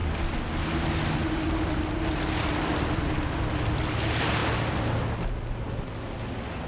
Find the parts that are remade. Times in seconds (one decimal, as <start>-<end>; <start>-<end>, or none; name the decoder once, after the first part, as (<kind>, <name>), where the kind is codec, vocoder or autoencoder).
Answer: none